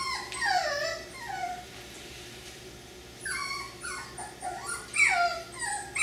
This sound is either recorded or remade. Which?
recorded